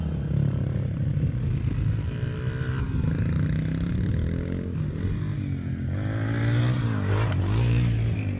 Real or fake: real